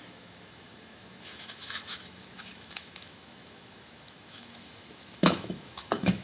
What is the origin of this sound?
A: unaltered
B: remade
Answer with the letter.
B